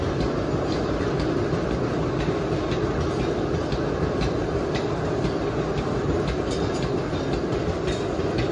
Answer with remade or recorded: recorded